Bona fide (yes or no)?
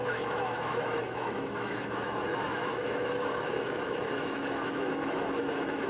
no